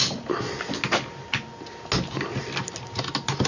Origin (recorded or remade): recorded